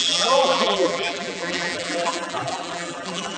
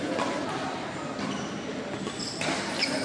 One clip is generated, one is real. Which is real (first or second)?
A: second